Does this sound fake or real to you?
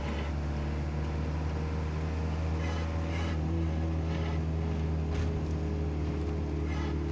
real